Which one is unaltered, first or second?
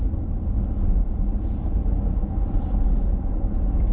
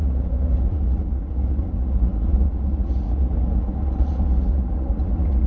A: first